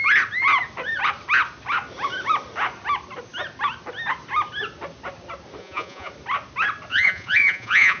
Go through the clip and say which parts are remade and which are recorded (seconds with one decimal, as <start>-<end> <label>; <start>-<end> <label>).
0.0-5.6 recorded; 5.6-6.1 remade; 6.1-6.9 recorded; 6.9-8.0 remade